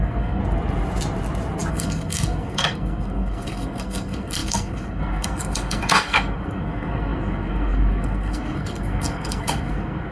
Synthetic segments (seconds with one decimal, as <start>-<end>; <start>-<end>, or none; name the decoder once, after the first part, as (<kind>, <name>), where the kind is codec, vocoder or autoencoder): 0.0-0.4 (codec, SNAC); 1.7-10.1